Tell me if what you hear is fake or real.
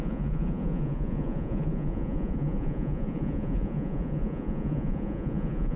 fake